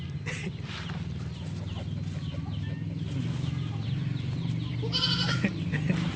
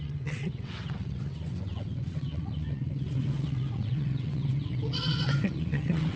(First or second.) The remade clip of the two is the second